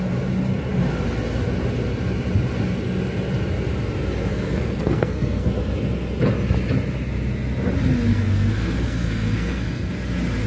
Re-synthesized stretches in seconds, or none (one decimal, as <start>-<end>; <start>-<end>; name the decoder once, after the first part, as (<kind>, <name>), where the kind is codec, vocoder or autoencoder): 4.3-5.5 (codec, SNAC); 8.1-9.9